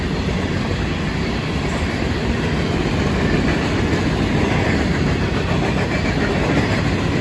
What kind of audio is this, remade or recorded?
recorded